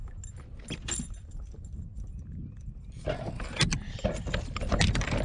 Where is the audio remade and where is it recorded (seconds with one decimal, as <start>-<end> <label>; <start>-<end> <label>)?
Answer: 0.0-5.2 recorded